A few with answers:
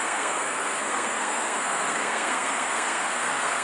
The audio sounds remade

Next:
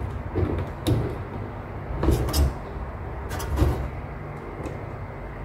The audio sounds recorded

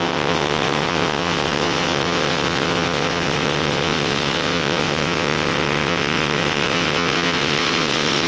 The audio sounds remade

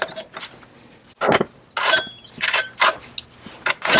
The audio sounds recorded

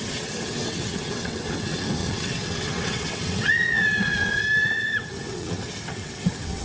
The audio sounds remade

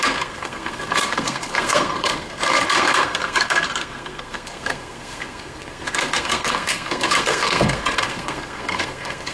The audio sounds remade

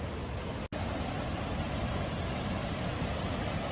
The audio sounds recorded